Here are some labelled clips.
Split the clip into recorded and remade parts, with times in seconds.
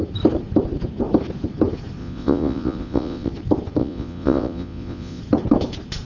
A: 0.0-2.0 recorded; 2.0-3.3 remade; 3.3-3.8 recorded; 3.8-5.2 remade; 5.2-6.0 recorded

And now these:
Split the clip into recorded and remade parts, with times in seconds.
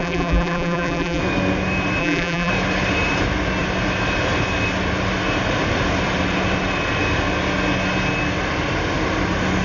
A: 0.0-1.2 remade; 1.2-2.0 recorded; 2.0-2.5 remade; 2.5-9.6 recorded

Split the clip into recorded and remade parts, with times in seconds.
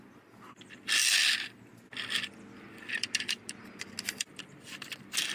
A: 0.0-5.3 recorded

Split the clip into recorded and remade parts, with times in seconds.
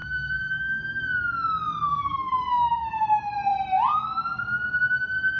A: 0.0-0.8 remade; 0.8-1.9 recorded; 1.9-2.9 remade; 2.9-5.4 recorded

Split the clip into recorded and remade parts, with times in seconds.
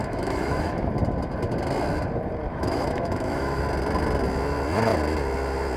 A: 0.0-0.9 remade; 0.9-2.5 recorded; 2.5-3.6 remade; 3.6-5.8 recorded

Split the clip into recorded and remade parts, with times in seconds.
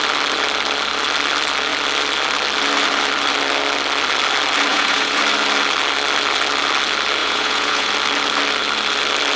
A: 0.0-4.7 recorded; 4.7-5.2 remade; 5.2-7.2 recorded; 7.2-7.9 remade; 7.9-9.4 recorded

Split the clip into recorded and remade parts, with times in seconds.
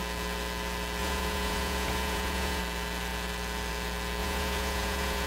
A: 0.0-1.0 recorded; 1.0-2.6 remade; 2.6-4.2 recorded; 4.2-5.3 remade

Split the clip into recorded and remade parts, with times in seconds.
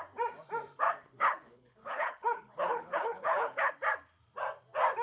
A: 0.0-1.0 recorded; 1.0-3.7 remade; 3.7-5.0 recorded